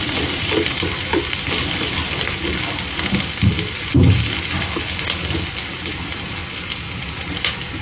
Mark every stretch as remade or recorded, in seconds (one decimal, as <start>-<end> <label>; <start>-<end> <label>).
0.0-7.8 recorded